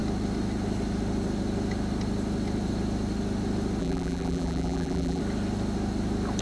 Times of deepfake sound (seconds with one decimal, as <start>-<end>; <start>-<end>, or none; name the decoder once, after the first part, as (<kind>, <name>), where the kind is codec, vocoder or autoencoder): 3.8-5.2 (vocoder, BigVGAN v2)

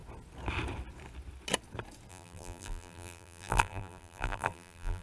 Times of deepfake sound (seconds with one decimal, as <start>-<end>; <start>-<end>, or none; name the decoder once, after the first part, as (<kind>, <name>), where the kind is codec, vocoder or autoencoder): 2.1-5.0 (vocoder, BigVGAN v2)

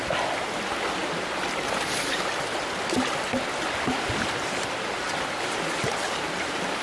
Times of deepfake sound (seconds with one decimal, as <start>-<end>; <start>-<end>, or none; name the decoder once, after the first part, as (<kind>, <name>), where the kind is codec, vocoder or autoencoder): none

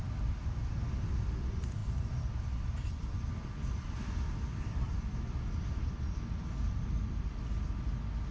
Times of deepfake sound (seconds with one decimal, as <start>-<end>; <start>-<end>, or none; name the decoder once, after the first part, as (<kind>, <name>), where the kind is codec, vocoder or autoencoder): none

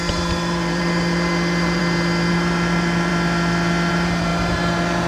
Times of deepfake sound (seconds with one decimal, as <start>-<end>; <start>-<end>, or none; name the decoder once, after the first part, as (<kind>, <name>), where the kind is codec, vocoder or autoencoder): 0.0-1.8 (vocoder, BigVGAN v2); 2.3-3.1; 3.9-5.1

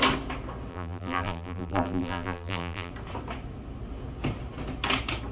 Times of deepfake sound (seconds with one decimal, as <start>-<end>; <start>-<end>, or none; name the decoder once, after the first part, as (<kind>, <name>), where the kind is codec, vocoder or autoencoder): 0.7-2.9 (vocoder, BigVGAN v2)

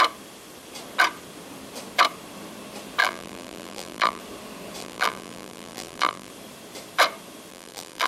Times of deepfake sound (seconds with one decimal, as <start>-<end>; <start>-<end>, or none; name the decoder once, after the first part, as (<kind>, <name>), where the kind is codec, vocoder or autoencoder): 3.0-4.2 (vocoder, BigVGAN v2); 4.8-6.3; 7.5-8.1